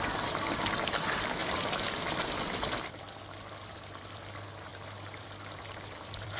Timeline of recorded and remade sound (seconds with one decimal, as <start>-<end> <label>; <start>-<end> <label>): 0.0-1.4 recorded; 1.4-4.2 remade; 4.2-4.7 recorded; 4.7-6.4 remade